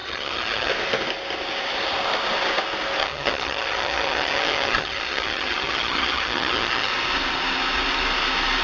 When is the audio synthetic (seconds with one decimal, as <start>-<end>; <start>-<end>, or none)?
0.0-0.7; 3.0-6.9